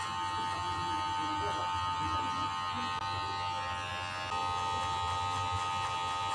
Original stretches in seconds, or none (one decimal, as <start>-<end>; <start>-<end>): 0.0-6.3